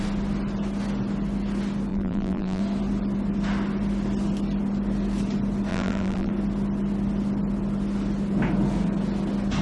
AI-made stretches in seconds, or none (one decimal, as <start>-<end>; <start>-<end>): 1.9-2.6; 5.7-6.3